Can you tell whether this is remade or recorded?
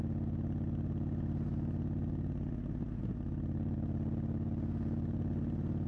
recorded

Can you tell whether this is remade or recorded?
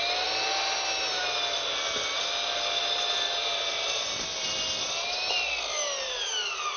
recorded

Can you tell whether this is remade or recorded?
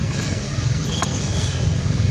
remade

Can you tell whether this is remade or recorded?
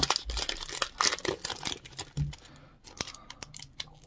recorded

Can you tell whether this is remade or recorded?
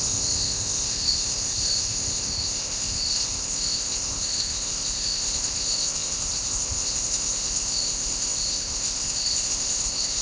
remade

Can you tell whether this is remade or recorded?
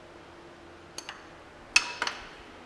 recorded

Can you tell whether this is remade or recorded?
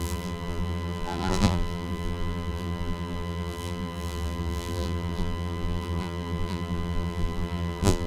remade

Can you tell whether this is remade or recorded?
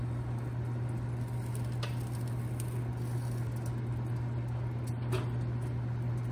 recorded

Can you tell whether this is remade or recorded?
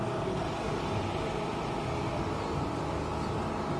recorded